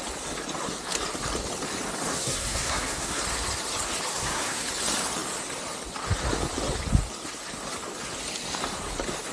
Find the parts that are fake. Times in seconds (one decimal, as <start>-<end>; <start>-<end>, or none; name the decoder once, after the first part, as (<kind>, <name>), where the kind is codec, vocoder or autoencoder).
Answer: 2.1-3.2 (codec, SNAC); 4.1-4.7